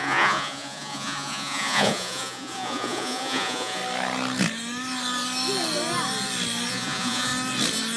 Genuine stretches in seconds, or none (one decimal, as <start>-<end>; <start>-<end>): 3.8-6.7; 7.3-8.0